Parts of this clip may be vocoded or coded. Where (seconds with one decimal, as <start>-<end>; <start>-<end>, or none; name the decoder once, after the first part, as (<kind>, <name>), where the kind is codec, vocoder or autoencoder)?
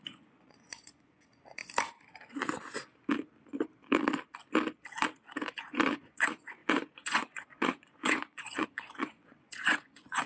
0.0-1.6 (vocoder, Vocos); 5.6-10.3